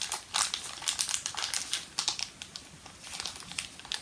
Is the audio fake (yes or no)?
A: no